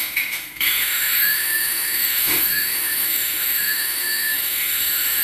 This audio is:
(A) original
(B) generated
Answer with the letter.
B